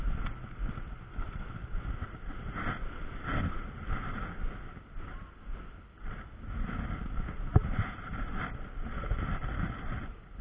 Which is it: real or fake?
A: real